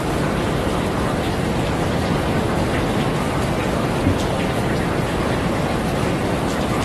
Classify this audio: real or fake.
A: real